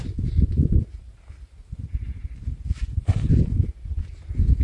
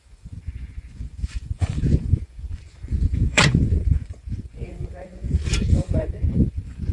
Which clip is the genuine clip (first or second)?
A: first